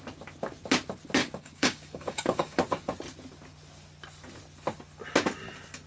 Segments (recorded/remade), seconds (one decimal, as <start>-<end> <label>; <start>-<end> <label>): 0.0-1.2 recorded; 1.2-2.6 remade; 2.6-5.9 recorded